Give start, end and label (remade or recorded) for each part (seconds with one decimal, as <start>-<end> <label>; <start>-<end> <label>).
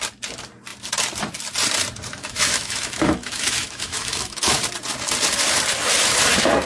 0.0-2.1 recorded; 2.1-4.6 remade; 4.6-6.7 recorded